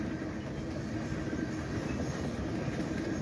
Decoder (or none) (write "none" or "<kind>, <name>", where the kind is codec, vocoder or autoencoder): none